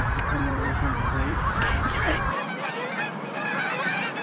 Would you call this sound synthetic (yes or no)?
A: yes